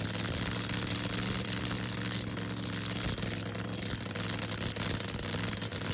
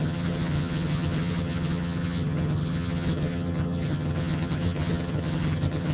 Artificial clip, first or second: second